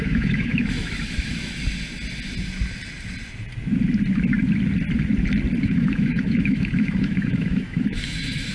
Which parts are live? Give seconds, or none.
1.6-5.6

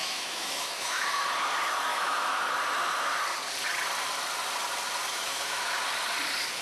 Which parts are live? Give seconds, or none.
1.2-1.9; 2.4-5.1; 5.8-6.6

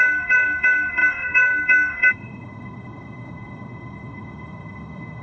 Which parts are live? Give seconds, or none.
none

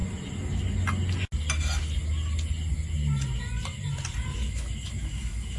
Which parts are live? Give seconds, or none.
0.0-4.4

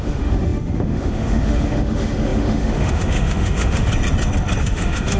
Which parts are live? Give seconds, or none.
3.9-4.6